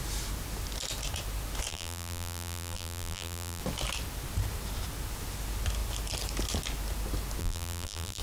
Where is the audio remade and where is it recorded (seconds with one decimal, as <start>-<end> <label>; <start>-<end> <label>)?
0.0-1.7 recorded; 1.7-3.6 remade; 3.6-7.4 recorded; 7.4-8.2 remade